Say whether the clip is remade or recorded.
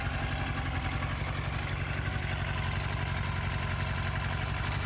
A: recorded